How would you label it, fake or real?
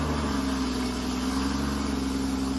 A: real